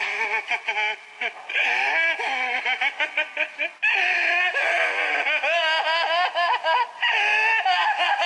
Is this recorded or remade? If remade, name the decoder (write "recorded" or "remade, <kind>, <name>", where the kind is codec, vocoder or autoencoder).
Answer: recorded